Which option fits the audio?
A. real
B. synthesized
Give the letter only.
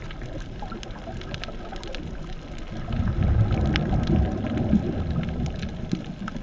A